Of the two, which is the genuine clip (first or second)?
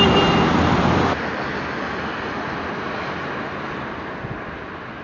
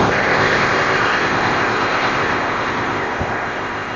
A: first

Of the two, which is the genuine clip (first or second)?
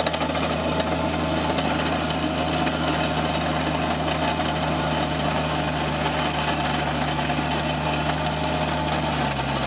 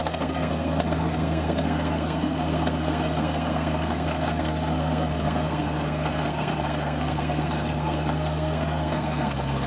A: first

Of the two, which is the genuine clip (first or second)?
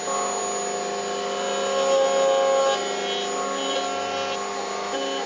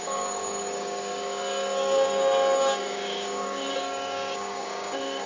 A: first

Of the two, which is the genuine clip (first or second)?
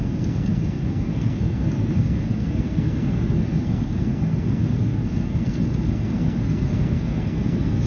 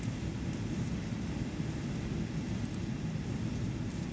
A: second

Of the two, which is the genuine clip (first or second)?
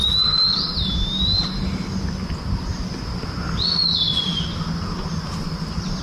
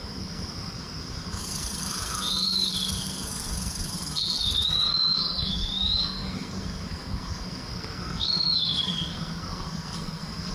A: first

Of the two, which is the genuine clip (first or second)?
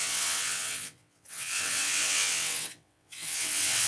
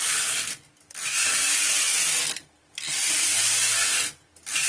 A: second